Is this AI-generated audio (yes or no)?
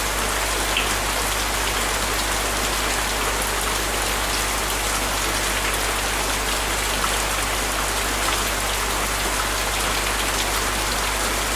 no